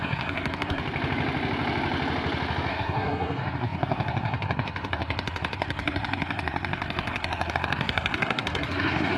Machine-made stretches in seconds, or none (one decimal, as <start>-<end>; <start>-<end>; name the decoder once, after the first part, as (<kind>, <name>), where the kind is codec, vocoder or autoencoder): 0.0-0.8 (codec, SNAC); 2.7-9.2